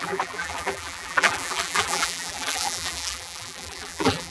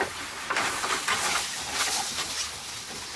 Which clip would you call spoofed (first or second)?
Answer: first